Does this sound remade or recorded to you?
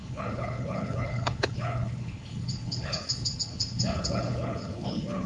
remade